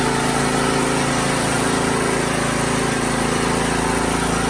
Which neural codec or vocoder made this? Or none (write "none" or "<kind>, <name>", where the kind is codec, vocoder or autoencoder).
none